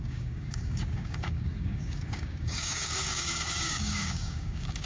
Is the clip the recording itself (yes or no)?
no